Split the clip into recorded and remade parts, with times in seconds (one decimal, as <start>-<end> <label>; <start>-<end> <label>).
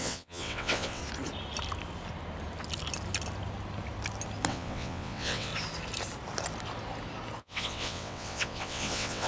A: 0.0-1.0 remade; 1.0-4.5 recorded; 4.5-5.5 remade; 5.5-7.4 recorded; 7.4-9.3 remade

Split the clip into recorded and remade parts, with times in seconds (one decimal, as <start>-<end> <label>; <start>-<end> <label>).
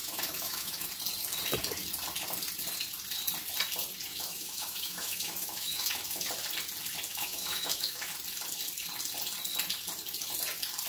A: 0.0-0.9 remade; 0.9-4.1 recorded; 4.1-6.3 remade; 6.3-7.1 recorded; 7.1-8.1 remade; 8.1-10.9 recorded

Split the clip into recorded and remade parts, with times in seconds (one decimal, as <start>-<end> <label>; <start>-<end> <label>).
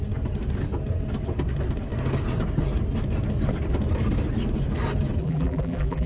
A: 0.0-5.2 recorded; 5.2-6.1 remade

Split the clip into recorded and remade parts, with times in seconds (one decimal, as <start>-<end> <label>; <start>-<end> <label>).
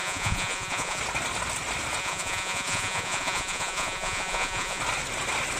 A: 0.0-1.0 remade; 1.0-2.0 recorded; 2.0-4.8 remade; 4.8-5.6 recorded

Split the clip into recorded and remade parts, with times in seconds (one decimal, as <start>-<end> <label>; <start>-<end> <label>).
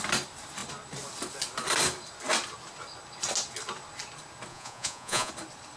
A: 0.0-4.5 recorded; 4.5-5.3 remade; 5.3-5.8 recorded